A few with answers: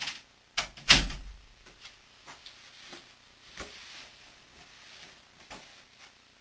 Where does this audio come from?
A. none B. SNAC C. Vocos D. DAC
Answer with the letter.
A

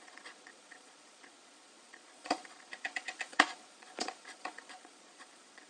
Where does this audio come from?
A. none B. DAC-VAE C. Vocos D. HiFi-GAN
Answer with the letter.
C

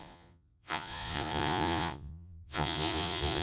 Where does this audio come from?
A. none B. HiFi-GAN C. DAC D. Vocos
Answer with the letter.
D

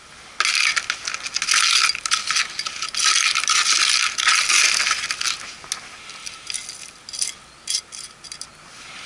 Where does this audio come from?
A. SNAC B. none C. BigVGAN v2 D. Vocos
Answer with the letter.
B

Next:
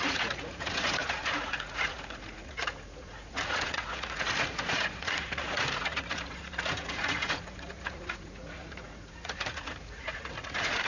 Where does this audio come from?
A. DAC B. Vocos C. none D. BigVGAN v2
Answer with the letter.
B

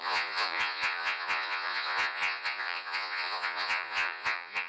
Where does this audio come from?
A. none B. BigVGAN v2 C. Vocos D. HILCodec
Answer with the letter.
C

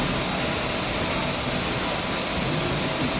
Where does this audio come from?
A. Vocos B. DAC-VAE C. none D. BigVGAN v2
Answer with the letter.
C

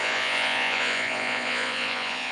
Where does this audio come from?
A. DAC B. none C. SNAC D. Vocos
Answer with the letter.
D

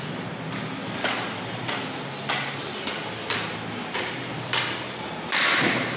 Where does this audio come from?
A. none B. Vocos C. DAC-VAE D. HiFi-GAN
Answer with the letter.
A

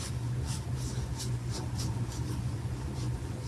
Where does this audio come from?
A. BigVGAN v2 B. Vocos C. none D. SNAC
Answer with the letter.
B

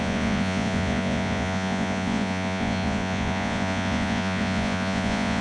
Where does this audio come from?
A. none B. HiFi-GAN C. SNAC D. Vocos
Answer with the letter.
D